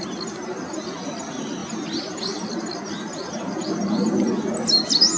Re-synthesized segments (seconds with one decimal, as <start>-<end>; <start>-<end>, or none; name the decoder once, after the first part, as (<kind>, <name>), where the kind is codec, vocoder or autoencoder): none